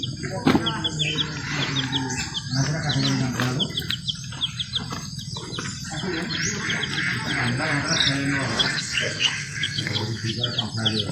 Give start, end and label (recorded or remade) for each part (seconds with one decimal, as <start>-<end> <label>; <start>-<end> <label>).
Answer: 0.0-8.5 recorded; 8.5-10.3 remade; 10.3-11.1 recorded